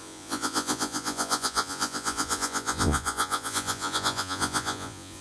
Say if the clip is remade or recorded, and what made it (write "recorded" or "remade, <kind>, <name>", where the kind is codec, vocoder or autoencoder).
remade, vocoder, Vocos